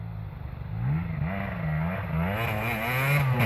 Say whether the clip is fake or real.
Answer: real